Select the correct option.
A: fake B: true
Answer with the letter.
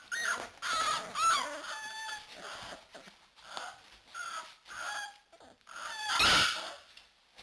B